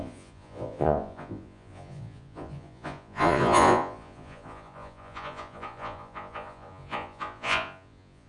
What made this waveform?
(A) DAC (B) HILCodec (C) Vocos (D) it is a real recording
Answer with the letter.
C